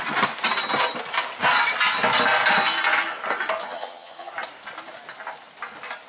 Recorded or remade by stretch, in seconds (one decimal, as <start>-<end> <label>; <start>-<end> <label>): 0.0-3.6 recorded; 3.6-4.3 remade; 4.3-6.1 recorded